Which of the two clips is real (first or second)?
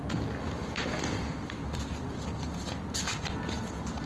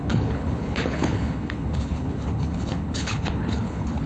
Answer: first